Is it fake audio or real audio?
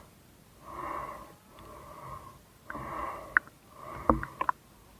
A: real